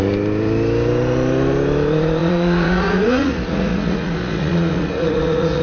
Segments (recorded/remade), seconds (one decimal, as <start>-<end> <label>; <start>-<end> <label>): 0.0-2.2 recorded; 2.2-5.6 remade